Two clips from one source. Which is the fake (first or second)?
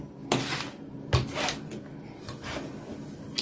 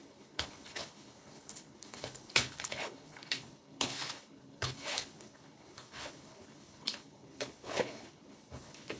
second